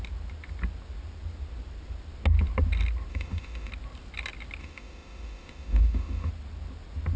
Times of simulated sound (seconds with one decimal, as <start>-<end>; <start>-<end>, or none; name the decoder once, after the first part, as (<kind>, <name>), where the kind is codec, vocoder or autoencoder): 3.1-3.7 (autoencoder, DAC-VAE); 4.6-6.3